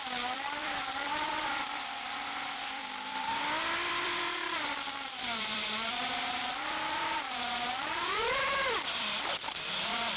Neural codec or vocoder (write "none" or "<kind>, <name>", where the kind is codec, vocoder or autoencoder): vocoder, BigVGAN v2